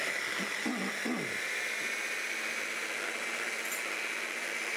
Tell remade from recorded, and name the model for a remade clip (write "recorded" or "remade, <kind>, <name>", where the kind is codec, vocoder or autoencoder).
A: recorded